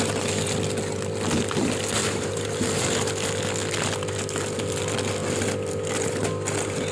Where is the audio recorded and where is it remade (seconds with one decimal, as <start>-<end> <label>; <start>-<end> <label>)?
0.0-2.0 recorded; 2.0-2.6 remade; 2.6-6.9 recorded